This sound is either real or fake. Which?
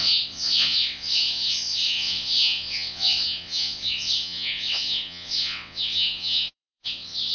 fake